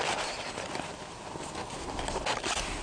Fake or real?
real